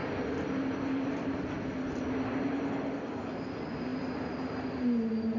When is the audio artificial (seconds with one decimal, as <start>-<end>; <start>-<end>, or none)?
none